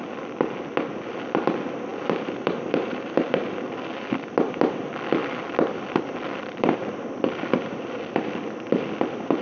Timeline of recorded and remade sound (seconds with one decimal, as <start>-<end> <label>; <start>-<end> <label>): 0.0-1.9 recorded; 1.9-3.7 remade; 3.7-5.2 recorded; 5.2-7.5 remade; 7.5-9.4 recorded